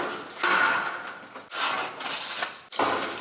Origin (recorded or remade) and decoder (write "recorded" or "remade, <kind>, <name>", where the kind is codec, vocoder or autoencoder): recorded